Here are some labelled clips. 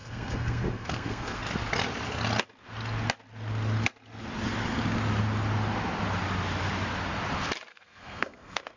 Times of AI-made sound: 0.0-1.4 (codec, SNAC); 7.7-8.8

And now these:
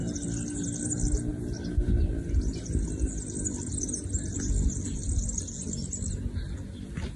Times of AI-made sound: none